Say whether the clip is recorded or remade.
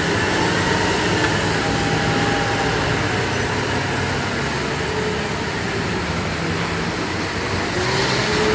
recorded